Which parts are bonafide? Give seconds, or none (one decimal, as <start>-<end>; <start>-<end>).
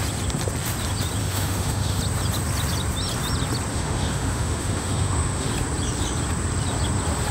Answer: 0.0-1.2; 2.0-3.7; 5.5-7.3